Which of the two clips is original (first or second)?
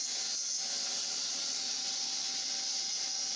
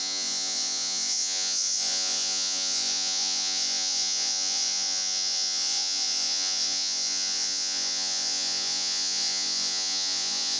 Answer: first